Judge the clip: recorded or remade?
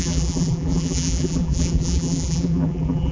remade